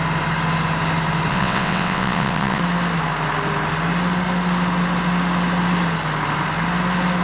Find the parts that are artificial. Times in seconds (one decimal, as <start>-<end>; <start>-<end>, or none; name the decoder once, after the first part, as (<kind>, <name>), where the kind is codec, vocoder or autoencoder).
1.3-2.6 (vocoder, WaveNeXt)